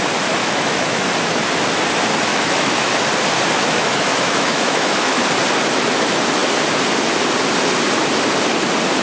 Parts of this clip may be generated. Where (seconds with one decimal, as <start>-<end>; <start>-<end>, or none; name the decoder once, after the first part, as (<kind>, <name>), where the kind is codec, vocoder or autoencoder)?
0.4-1.0 (autoencoder, DAC-VAE); 2.3-2.9; 3.6-5.2